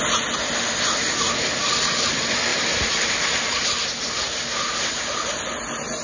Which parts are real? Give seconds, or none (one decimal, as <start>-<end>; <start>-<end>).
0.0-2.5; 3.6-6.0

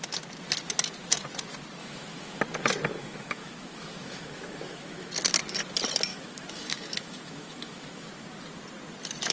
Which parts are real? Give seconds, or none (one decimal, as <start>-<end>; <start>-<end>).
0.0-1.8; 2.4-3.0; 5.1-6.1; 8.1-9.3

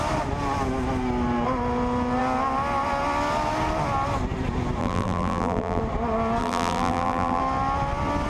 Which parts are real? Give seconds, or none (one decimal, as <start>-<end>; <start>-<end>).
0.0-4.8; 5.8-6.4; 7.4-8.3

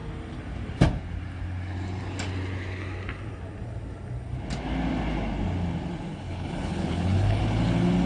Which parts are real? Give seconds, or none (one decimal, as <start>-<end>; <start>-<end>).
0.0-6.1; 7.4-8.1

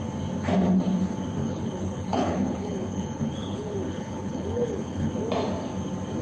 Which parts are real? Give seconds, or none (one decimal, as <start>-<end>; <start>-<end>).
0.0-1.4; 5.1-6.2

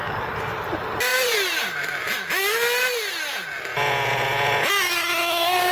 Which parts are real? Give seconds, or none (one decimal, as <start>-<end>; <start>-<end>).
0.0-3.7; 4.7-5.7